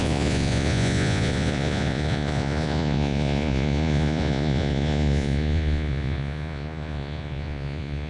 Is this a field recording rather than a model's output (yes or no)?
no